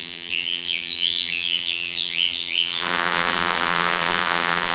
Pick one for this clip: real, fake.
fake